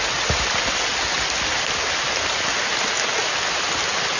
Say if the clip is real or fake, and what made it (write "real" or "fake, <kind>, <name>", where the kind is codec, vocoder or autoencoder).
real